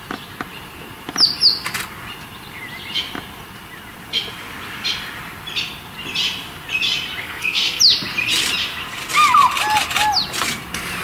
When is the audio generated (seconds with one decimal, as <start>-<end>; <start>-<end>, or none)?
7.2-7.8